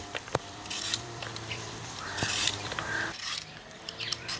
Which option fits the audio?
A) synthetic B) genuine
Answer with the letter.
A